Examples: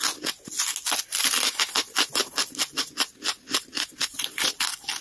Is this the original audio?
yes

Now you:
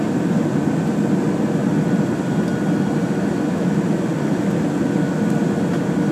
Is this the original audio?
yes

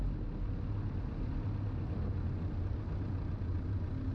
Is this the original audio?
yes